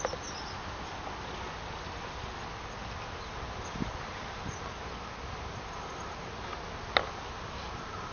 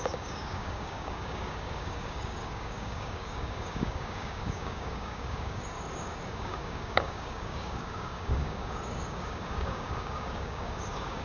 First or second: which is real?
first